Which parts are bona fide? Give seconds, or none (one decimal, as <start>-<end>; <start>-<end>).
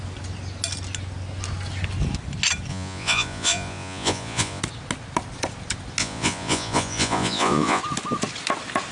0.0-2.7; 4.6-6.0; 7.8-8.9